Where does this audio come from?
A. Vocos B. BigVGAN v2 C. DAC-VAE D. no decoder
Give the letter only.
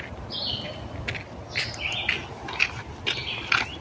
D